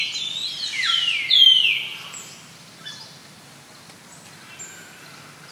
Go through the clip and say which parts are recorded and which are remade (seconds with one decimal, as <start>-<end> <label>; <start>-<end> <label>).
0.0-3.2 recorded; 3.2-3.8 remade; 3.8-5.5 recorded

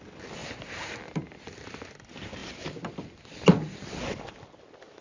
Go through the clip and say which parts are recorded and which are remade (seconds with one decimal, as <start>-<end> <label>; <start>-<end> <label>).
0.0-2.4 remade; 2.4-4.3 recorded; 4.3-5.0 remade

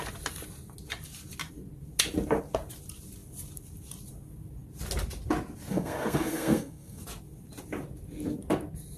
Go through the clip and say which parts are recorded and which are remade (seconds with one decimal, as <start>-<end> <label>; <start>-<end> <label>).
0.0-5.7 recorded; 5.7-7.0 remade; 7.0-9.0 recorded

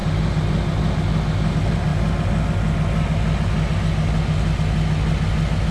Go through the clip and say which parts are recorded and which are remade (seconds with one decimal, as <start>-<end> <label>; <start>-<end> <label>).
0.0-5.7 recorded